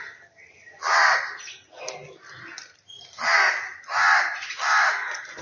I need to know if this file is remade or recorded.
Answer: recorded